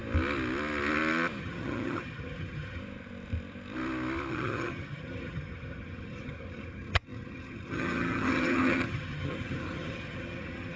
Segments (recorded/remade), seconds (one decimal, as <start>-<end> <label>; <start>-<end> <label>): 0.0-1.4 recorded; 1.4-2.8 remade; 2.8-4.3 recorded; 4.3-10.8 remade